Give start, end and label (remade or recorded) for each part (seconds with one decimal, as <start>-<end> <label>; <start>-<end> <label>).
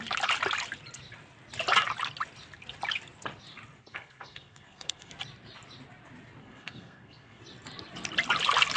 0.0-3.8 recorded; 3.8-5.1 remade; 5.1-6.4 recorded; 6.4-7.4 remade; 7.4-8.8 recorded